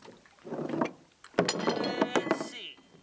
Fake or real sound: real